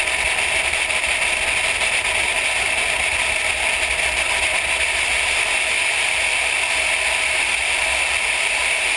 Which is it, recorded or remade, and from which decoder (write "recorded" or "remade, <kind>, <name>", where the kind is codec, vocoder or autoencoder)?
recorded